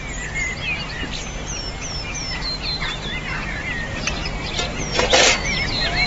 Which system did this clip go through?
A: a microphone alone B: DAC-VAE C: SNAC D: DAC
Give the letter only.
A